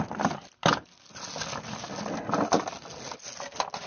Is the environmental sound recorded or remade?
recorded